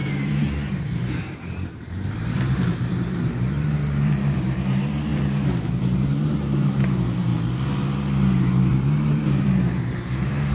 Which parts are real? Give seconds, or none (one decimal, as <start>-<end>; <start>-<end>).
5.1-5.8; 7.3-8.7